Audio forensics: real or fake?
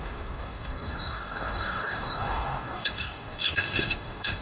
fake